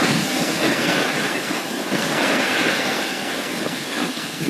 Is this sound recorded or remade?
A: remade